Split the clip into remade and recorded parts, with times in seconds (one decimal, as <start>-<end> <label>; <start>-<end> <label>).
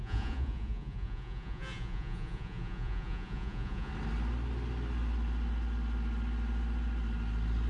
0.0-3.9 remade; 3.9-7.7 recorded